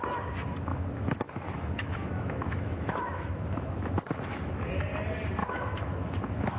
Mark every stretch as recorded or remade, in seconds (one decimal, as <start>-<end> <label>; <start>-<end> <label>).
0.0-0.7 recorded; 0.7-4.7 remade; 4.7-5.4 recorded; 5.4-6.6 remade